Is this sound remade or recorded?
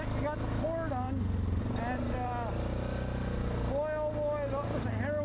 recorded